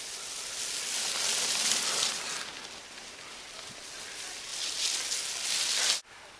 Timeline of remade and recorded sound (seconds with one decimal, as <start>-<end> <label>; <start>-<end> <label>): 0.0-6.4 recorded